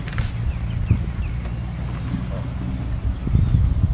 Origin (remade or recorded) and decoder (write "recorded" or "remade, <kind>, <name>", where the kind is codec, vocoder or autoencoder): recorded